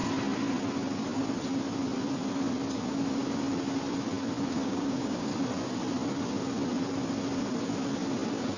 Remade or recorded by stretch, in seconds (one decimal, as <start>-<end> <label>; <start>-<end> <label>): 0.0-4.5 recorded; 4.5-5.3 remade; 5.3-8.6 recorded